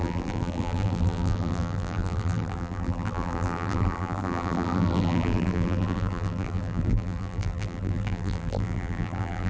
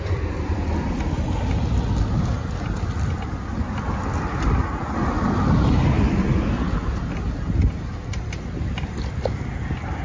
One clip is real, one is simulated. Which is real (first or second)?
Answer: second